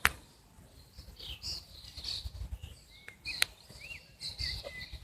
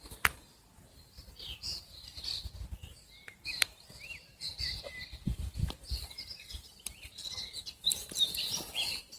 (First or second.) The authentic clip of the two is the first